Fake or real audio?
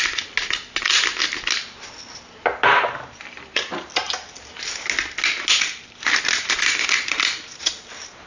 real